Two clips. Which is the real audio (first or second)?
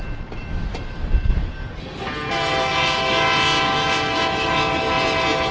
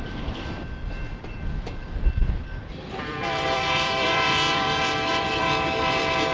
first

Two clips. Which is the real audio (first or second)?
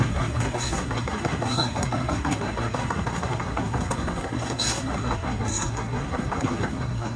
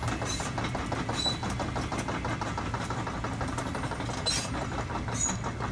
second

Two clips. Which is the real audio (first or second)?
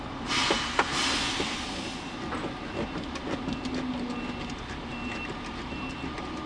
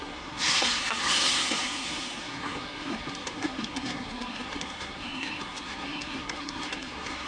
first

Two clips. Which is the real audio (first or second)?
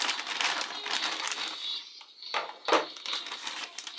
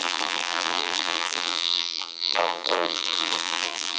first